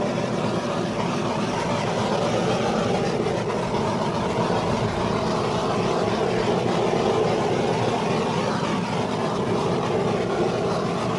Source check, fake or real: real